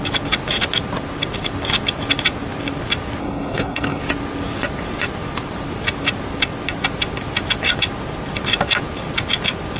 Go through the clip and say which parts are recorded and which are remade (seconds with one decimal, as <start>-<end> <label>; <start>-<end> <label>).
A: 0.0-3.2 recorded; 3.2-4.0 remade; 4.0-9.8 recorded